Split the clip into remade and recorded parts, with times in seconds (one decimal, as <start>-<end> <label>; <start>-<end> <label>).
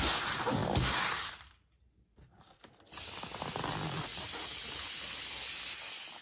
0.0-0.6 remade; 0.6-1.2 recorded; 1.2-6.2 remade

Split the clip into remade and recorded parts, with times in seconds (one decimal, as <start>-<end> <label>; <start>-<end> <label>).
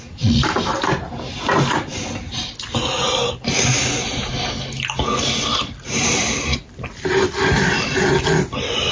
0.0-5.5 recorded; 5.5-8.2 remade; 8.2-8.9 recorded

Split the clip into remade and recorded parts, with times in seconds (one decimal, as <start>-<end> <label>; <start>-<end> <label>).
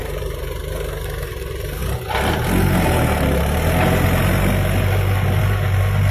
0.0-0.6 remade; 0.6-6.1 recorded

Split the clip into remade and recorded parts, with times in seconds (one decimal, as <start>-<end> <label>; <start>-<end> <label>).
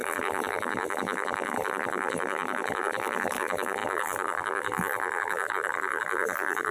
0.0-6.7 remade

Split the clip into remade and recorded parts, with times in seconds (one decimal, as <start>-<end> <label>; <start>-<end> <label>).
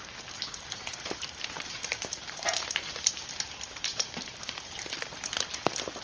0.0-0.9 recorded; 0.9-4.5 remade; 4.5-6.0 recorded